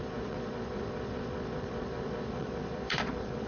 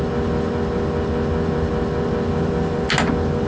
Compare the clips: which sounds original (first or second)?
second